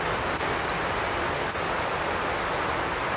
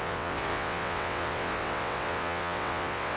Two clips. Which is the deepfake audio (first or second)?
second